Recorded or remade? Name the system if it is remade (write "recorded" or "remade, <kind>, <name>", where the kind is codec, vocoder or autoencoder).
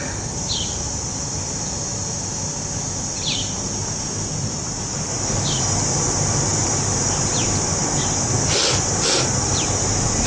recorded